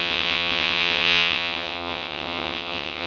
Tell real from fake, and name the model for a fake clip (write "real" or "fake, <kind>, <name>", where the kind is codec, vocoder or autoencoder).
fake, vocoder, WaveNeXt